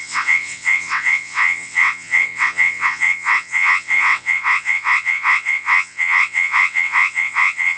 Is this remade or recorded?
remade